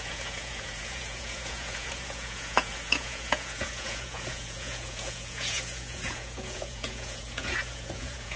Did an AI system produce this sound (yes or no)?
yes